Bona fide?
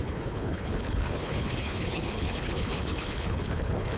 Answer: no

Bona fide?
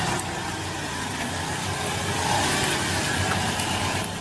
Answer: yes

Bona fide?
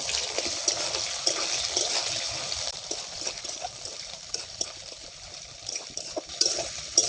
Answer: no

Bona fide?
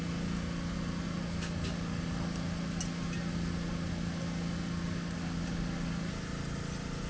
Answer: yes